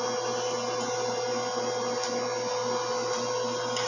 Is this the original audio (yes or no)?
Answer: yes